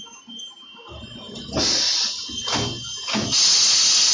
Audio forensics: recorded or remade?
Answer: recorded